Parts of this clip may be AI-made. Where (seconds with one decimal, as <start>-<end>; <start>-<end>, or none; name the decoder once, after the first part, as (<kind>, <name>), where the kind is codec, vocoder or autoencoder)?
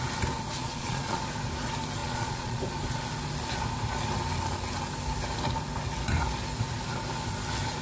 0.6-1.2 (vocoder, Vocos); 2.0-2.6